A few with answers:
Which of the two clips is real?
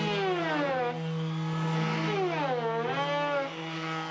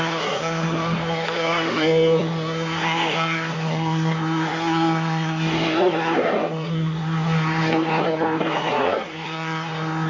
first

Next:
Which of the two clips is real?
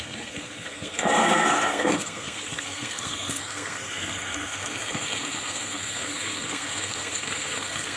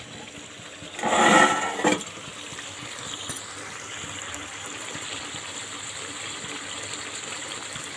second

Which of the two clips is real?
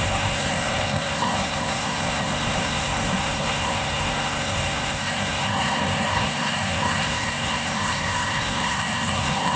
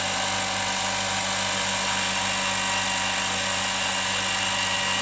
second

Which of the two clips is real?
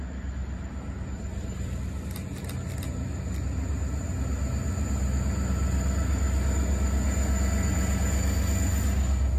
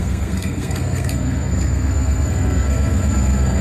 first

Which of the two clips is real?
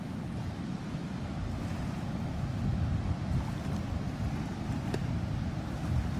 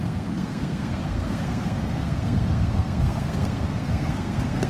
first